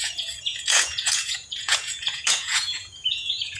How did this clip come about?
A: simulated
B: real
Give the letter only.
A